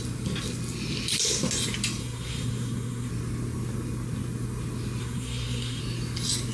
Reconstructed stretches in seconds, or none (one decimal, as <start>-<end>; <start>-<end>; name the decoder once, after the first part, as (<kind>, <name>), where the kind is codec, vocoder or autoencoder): 2.0-3.1 (codec, SNAC); 5.0-5.8